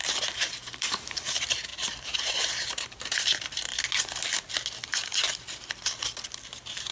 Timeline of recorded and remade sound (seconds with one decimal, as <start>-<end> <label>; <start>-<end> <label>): 0.0-3.7 remade; 3.7-6.9 recorded